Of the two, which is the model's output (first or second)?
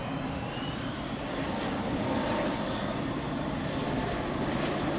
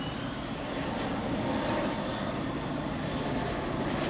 first